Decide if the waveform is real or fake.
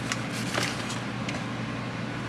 real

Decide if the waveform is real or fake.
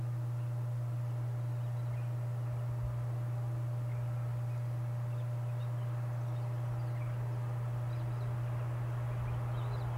real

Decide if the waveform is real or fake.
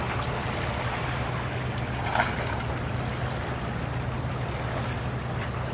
real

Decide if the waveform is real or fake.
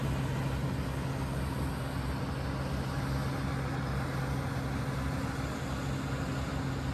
real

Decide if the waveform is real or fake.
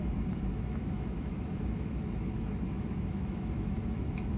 fake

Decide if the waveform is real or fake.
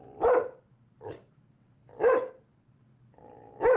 real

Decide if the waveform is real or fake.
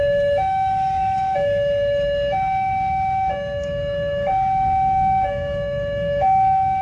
fake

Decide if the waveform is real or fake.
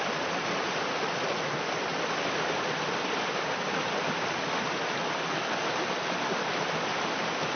real